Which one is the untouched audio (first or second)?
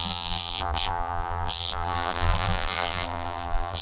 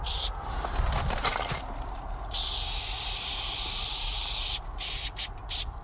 second